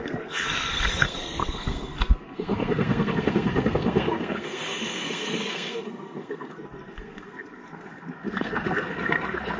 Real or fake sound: fake